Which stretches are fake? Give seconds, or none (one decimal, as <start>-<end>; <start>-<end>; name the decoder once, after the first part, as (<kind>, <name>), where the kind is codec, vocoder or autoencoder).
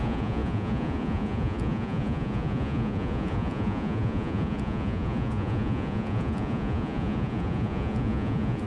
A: 0.0-8.7 (vocoder, Vocos)